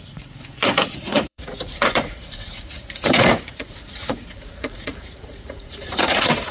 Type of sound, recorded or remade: remade